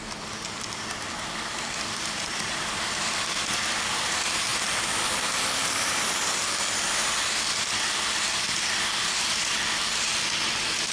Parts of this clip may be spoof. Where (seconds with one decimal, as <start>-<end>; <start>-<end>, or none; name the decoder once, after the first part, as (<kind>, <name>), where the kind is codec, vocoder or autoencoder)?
0.0-4.5 (vocoder, BigVGAN v2); 5.0-10.9